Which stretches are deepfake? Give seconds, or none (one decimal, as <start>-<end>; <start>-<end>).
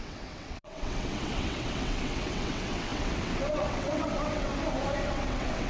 0.0-4.5; 5.1-5.7